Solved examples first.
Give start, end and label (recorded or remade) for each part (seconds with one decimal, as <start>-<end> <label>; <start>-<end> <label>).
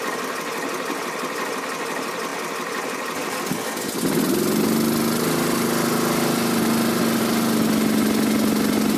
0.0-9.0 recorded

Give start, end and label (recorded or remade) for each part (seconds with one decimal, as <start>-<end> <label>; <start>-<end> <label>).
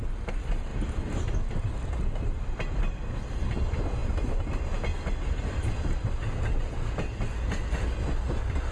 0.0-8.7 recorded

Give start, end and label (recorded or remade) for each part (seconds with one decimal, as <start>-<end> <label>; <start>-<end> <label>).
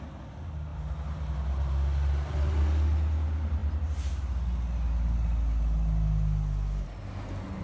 0.0-7.6 recorded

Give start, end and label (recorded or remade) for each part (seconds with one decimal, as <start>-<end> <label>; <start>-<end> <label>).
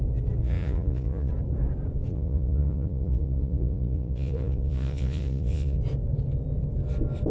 0.0-0.4 recorded; 0.4-1.3 remade; 1.3-2.1 recorded; 2.1-5.8 remade; 5.8-7.3 recorded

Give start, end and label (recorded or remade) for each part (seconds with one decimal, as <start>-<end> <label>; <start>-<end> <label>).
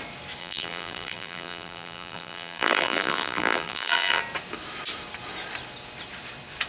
0.0-0.4 recorded; 0.4-4.2 remade; 4.2-6.7 recorded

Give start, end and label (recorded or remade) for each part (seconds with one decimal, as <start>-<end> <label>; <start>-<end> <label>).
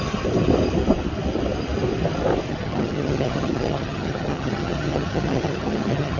0.0-2.5 recorded; 2.5-6.2 remade